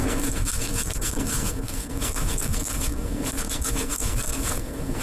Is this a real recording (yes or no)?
no